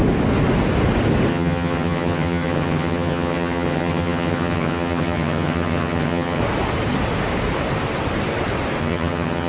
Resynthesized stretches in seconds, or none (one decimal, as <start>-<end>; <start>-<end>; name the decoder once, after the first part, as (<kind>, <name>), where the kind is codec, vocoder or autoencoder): 1.3-6.4 (vocoder, HiFi-GAN); 8.8-9.5